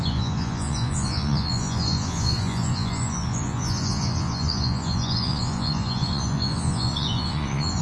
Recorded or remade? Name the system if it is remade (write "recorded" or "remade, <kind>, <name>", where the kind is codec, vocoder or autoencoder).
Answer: remade, vocoder, Vocos